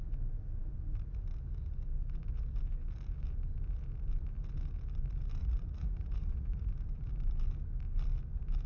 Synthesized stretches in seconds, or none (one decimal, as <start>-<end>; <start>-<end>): 5.4-6.7